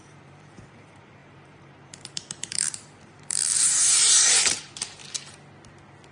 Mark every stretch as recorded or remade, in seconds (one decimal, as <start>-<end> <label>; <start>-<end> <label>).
0.0-5.0 remade; 5.0-6.1 recorded